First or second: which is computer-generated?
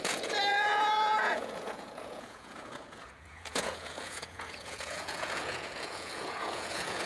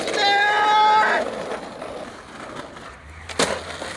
first